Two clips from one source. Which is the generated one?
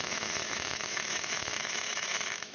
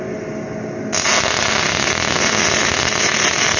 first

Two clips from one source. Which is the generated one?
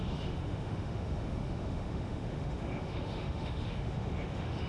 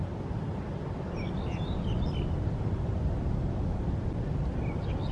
first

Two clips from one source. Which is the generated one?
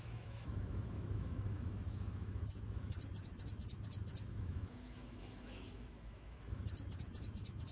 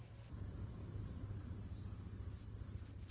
first